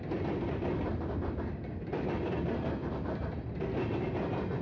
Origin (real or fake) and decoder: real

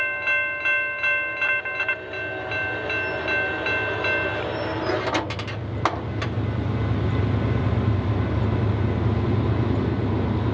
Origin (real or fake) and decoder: real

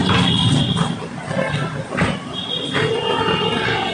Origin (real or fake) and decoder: real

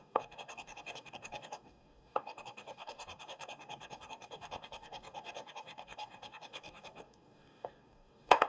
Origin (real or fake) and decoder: fake, codec, DAC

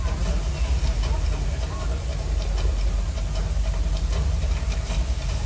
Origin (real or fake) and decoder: real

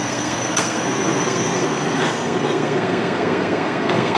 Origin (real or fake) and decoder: fake, codec, SNAC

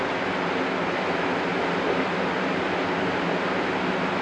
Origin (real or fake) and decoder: real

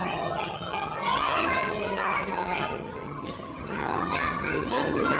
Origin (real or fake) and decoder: fake, vocoder, HiFi-GAN